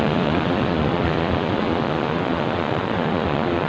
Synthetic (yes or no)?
yes